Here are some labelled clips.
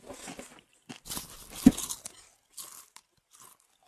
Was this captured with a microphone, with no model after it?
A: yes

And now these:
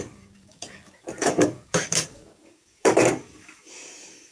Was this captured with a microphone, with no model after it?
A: no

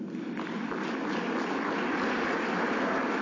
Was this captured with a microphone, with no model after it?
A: yes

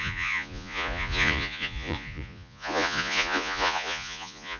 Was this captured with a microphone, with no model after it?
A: no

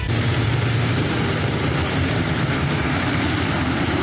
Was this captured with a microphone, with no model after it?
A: no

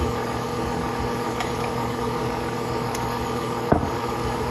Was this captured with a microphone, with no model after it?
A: no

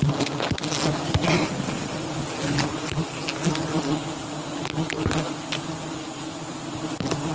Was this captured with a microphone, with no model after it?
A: yes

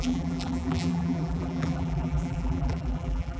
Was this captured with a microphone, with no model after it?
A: no